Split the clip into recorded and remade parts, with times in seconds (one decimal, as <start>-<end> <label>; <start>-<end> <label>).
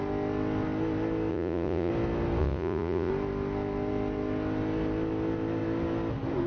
0.0-1.3 recorded; 1.3-1.9 remade; 1.9-2.4 recorded; 2.4-3.1 remade; 3.1-6.5 recorded